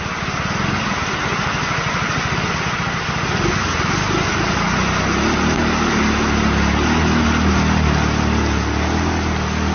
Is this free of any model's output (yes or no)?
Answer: yes